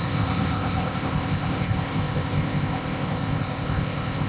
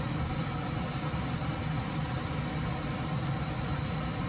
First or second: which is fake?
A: first